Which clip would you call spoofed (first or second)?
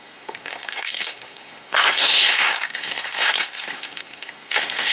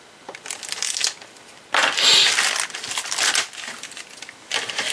first